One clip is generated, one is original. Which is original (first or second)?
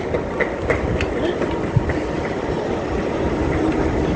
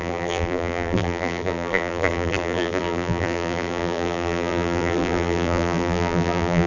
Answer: first